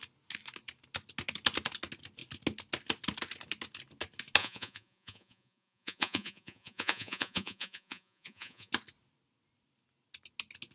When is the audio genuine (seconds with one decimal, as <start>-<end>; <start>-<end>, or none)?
0.0-4.4; 8.7-10.7

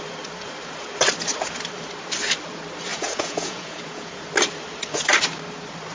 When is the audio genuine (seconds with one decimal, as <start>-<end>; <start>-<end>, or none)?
0.0-2.9; 4.3-5.9

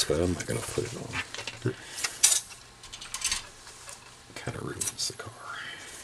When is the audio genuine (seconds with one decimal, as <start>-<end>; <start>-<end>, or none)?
0.7-1.8; 2.6-4.5

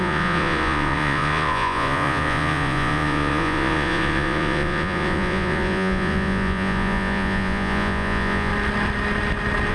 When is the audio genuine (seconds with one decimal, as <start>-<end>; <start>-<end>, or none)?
8.5-9.7

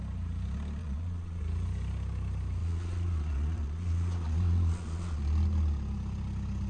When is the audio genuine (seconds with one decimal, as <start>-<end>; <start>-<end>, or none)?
0.0-0.8; 1.4-2.6; 5.2-6.7